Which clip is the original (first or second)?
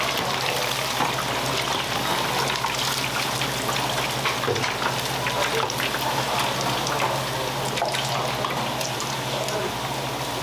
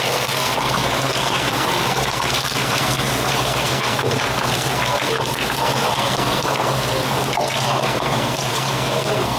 first